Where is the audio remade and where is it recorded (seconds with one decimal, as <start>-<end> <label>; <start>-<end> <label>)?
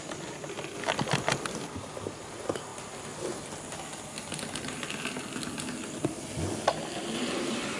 0.0-7.8 recorded